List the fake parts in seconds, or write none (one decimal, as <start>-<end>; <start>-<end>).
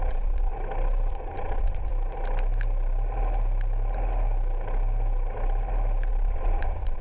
0.0-0.5; 1.1-1.9; 6.1-7.0